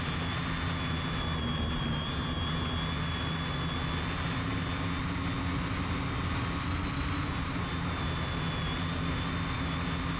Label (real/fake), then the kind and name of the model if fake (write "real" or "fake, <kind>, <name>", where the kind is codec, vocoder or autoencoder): real